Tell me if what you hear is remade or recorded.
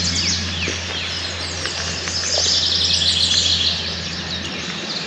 recorded